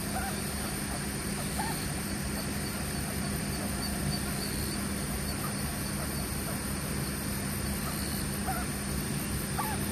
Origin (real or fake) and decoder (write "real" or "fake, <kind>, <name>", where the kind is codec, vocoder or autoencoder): real